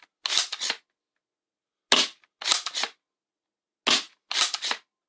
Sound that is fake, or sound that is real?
real